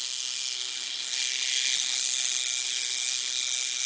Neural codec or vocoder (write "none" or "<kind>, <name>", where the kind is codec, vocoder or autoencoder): codec, SNAC